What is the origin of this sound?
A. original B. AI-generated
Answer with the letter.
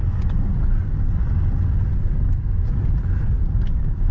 A